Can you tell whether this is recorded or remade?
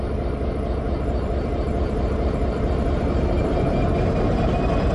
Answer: remade